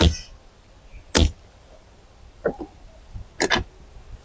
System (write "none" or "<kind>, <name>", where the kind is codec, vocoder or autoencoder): none